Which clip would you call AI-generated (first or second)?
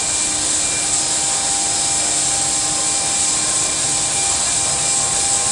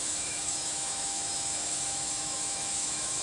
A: second